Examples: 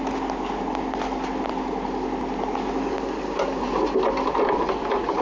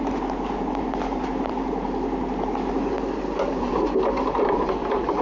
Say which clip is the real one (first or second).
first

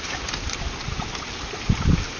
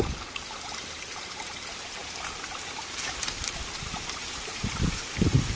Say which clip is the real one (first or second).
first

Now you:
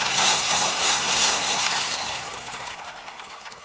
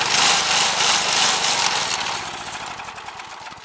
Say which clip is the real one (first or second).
second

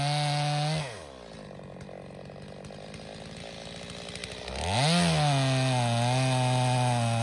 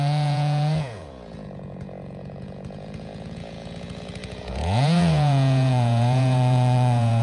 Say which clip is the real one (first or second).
first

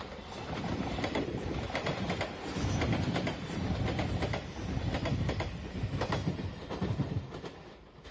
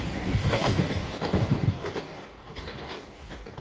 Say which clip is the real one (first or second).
first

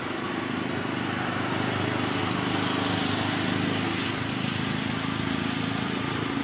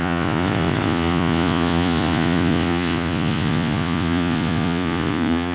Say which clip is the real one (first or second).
first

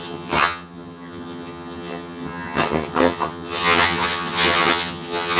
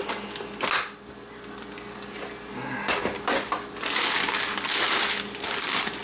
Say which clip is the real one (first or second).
second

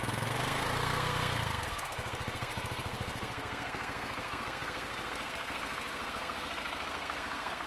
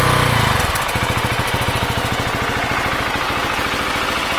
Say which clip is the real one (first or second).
second